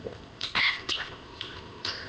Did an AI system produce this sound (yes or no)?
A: yes